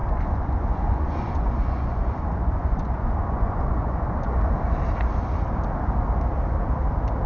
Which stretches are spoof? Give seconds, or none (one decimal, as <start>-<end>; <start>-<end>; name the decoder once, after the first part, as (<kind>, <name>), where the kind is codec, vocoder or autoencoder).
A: 0.0-4.4 (vocoder, Vocos)